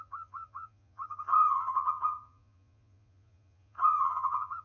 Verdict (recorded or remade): remade